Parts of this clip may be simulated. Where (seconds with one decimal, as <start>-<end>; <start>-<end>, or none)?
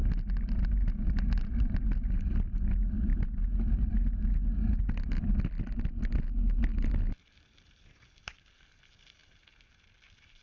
none